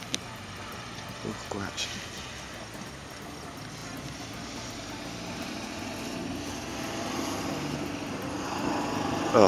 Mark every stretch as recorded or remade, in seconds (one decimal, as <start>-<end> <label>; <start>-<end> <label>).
0.0-9.5 recorded